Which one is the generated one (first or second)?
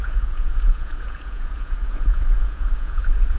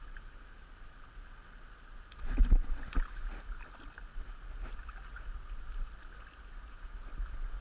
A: first